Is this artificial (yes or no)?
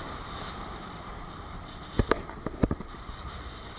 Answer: yes